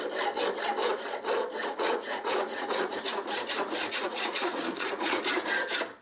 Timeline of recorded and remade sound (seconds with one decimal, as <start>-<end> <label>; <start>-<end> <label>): 0.0-1.6 recorded; 1.6-5.2 remade; 5.2-6.0 recorded